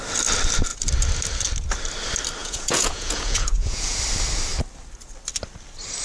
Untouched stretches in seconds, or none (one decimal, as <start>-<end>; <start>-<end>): 0.0-2.4; 4.0-6.0

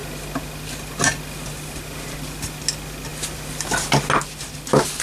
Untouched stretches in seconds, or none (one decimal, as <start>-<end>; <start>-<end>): 0.0-5.0

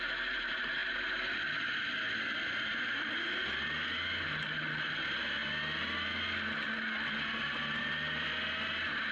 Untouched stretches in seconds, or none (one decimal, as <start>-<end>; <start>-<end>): 0.0-9.1

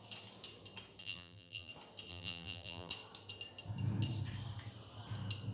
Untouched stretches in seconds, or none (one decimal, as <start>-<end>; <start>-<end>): 0.0-1.0; 1.7-2.1; 2.9-5.5

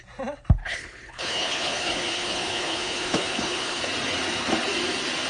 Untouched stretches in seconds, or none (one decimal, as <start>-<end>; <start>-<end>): 0.0-0.6; 3.8-5.3

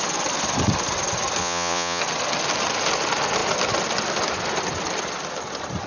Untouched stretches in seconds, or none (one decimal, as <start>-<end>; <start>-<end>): 0.0-1.4; 2.0-5.9

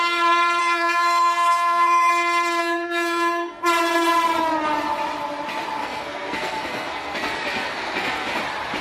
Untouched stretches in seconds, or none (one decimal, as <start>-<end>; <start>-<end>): 0.0-0.6; 2.1-2.6; 3.6-5.8; 8.4-8.8